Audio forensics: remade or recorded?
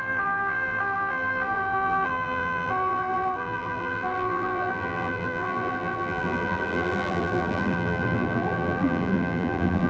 remade